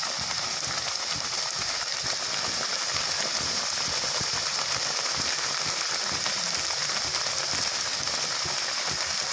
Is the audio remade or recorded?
recorded